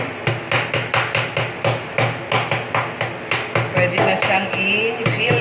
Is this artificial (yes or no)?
no